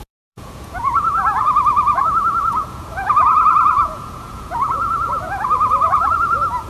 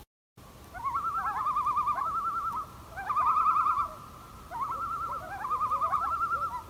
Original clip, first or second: second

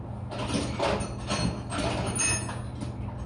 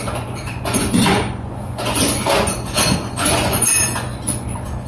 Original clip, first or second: first